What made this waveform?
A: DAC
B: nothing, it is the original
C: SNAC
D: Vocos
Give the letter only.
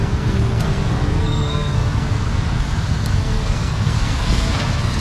C